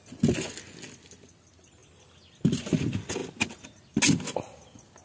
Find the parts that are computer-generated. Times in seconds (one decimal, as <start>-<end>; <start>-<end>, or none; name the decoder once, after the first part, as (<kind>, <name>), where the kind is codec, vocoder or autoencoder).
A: none

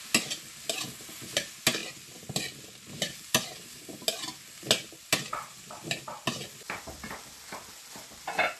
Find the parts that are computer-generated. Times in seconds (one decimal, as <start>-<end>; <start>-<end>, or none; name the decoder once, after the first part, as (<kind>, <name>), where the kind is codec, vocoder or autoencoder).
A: none

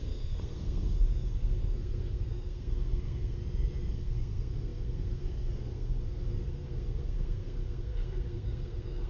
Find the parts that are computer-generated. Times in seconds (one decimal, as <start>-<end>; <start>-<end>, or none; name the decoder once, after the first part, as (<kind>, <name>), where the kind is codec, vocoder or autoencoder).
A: 0.0-3.4 (codec, SNAC); 3.9-9.1

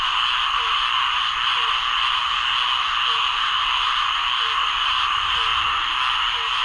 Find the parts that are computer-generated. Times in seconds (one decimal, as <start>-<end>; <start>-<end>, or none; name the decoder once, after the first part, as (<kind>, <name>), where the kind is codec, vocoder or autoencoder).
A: 0.0-1.5 (vocoder, BigVGAN v2); 4.4-5.5

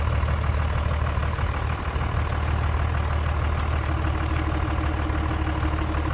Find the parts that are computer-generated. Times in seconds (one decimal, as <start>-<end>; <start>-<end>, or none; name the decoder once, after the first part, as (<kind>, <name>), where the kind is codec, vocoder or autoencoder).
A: none

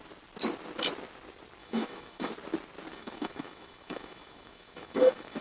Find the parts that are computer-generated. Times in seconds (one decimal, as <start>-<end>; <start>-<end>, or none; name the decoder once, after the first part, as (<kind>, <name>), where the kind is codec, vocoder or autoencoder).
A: 1.6-2.3 (autoencoder, DAC-VAE); 2.9-5.4

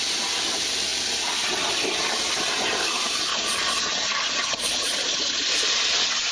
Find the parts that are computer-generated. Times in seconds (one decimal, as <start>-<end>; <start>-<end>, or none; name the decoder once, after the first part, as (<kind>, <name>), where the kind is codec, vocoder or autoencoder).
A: 3.3-6.3 (vocoder, Vocos)